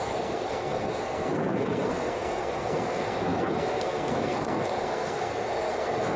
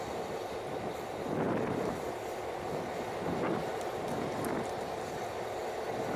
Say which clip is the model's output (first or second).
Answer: first